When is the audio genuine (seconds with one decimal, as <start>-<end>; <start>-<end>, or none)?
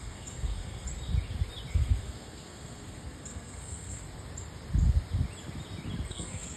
0.9-1.7; 4.0-6.1